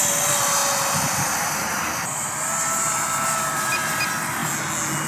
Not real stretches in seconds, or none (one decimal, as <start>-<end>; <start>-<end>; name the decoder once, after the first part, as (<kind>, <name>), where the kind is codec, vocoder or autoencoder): 0.0-4.4 (vocoder, BigVGAN v2)